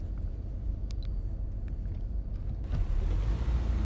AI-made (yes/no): no